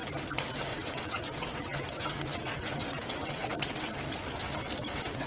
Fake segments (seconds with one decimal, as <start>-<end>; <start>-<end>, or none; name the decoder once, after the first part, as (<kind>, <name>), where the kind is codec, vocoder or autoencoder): 0.7-3.9 (vocoder, WaveNeXt); 4.8-5.3